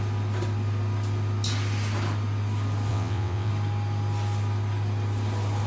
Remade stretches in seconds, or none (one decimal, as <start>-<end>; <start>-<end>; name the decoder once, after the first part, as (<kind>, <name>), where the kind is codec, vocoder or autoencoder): 2.9-3.5 (vocoder, WaveNeXt)